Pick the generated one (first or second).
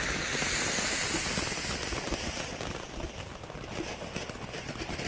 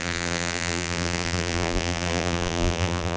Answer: second